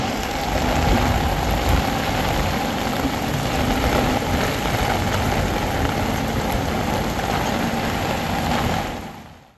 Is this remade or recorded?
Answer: recorded